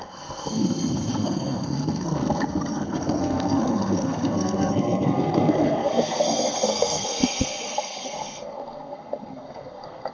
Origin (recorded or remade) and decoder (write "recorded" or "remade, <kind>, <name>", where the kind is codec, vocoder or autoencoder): remade, codec, SNAC